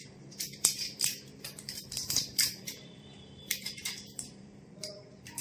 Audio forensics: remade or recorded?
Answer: remade